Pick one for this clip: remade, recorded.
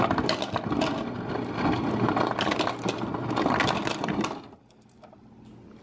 recorded